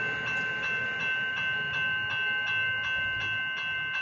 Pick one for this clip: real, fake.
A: real